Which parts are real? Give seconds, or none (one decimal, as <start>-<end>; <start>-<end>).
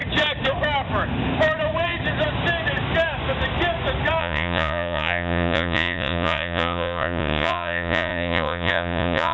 0.0-4.2